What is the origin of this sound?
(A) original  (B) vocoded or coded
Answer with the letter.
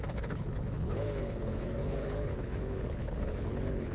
B